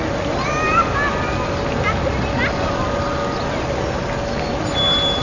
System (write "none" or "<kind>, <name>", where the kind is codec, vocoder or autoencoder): none